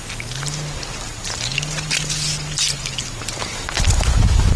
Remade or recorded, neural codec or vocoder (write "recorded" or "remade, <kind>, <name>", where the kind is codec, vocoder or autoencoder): recorded